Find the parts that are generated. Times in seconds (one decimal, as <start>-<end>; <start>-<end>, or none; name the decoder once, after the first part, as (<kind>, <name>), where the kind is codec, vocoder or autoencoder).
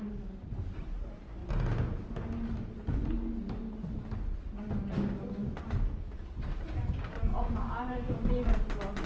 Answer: none